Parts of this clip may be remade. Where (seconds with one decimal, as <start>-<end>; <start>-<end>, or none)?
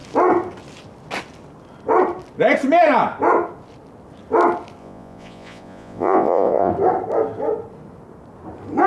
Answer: 4.8-6.7